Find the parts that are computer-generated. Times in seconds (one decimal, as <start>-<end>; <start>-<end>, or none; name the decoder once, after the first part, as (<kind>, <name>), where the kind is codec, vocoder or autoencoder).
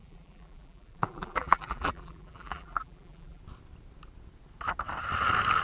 0.0-3.4 (vocoder, BigVGAN v2)